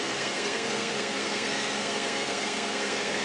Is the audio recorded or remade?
remade